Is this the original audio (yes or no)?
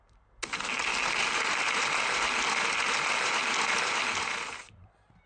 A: yes